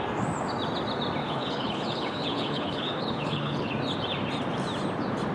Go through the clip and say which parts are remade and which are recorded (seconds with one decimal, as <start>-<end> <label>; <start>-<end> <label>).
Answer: 0.0-1.2 recorded; 1.2-3.7 remade; 3.7-5.3 recorded